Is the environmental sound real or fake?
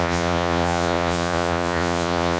fake